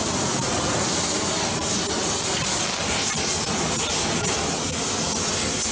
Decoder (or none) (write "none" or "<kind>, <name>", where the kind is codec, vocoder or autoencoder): none